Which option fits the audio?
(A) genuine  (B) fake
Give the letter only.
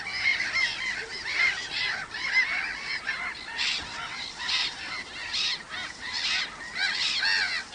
A